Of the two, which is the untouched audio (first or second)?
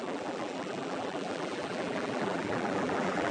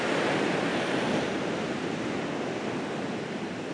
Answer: second